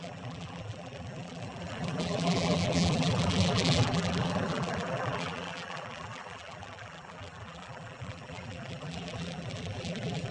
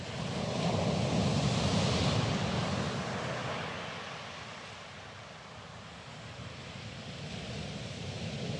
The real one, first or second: second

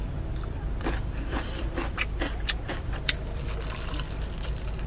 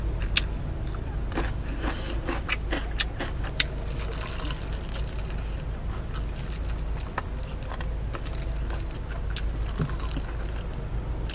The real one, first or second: second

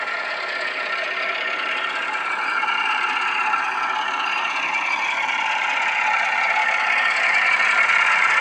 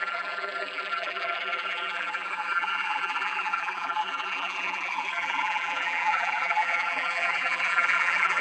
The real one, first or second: first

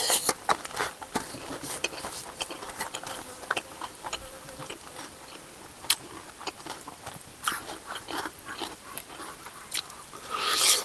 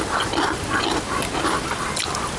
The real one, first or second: second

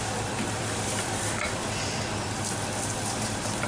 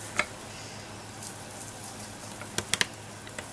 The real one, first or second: second